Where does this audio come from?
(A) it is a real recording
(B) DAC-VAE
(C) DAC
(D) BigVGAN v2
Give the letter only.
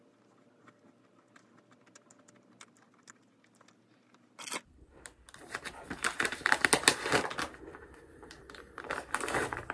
A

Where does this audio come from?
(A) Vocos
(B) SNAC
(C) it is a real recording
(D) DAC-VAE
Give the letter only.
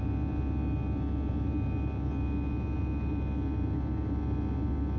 C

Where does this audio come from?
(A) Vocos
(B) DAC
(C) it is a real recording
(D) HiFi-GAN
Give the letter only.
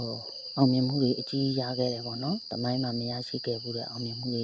C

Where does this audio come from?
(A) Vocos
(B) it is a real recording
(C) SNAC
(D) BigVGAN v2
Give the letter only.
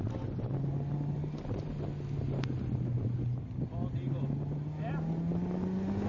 B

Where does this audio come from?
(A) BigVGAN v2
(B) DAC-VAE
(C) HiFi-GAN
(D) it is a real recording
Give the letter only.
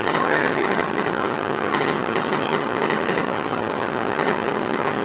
C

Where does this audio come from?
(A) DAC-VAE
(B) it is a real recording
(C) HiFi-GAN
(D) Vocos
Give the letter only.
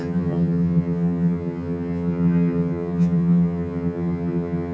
C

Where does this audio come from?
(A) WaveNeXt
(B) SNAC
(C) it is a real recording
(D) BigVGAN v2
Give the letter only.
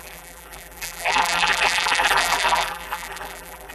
D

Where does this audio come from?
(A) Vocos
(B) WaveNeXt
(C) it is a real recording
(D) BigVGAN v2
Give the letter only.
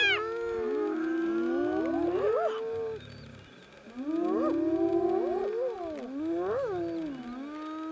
C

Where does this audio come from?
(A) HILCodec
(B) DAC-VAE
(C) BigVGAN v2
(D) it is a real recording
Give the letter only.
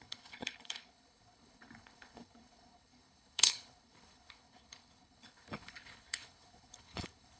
A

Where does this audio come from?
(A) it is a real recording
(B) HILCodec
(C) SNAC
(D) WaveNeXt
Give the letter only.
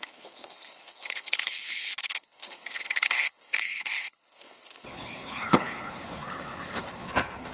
B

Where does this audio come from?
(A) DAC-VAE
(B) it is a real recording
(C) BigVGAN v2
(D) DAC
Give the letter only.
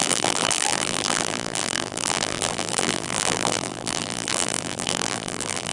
C